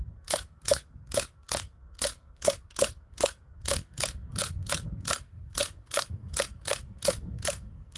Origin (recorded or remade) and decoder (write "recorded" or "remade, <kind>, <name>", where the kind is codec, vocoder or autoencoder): remade, codec, SNAC